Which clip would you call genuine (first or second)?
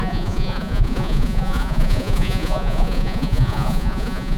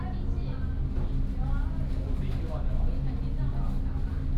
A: second